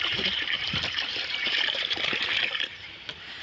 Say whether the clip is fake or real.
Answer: fake